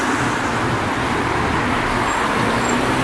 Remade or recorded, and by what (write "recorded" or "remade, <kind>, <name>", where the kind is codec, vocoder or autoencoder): recorded